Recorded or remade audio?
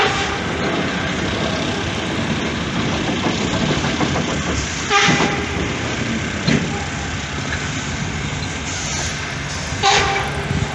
recorded